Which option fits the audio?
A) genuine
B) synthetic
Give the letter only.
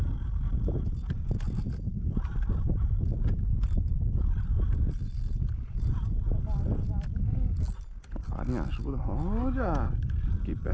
A